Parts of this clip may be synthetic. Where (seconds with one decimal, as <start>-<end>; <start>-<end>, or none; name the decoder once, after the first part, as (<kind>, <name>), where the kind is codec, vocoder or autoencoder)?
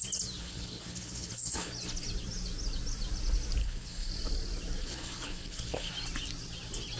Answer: 0.4-1.7 (codec, HILCodec); 3.6-4.1; 4.8-5.9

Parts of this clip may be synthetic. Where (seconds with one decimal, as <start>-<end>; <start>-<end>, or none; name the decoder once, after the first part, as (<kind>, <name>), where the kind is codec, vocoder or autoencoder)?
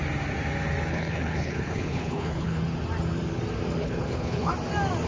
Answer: 0.9-2.6 (codec, HILCodec); 3.8-4.5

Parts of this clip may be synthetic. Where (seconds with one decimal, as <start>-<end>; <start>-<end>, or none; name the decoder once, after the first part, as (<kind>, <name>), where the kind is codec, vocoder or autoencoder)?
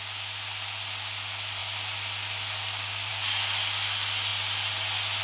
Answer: none